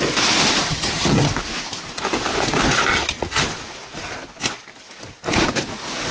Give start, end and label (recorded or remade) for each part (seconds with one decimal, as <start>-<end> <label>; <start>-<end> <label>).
0.0-0.7 recorded; 0.7-1.3 remade; 1.3-2.9 recorded; 2.9-3.4 remade; 3.4-6.1 recorded